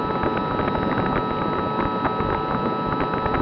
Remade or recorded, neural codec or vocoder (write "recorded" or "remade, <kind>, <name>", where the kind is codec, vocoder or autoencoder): recorded